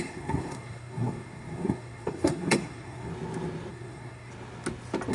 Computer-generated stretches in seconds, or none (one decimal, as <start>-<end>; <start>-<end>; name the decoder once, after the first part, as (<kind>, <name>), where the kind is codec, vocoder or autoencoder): 0.0-3.1 (codec, SNAC); 3.7-4.3